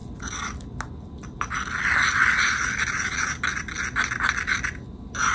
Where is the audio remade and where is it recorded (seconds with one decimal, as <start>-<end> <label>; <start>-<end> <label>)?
0.0-5.3 recorded